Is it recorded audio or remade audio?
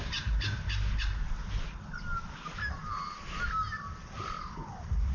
recorded